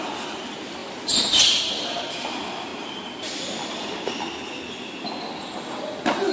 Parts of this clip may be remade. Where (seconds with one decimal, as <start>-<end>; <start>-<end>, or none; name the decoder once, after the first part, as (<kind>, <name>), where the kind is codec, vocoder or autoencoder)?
none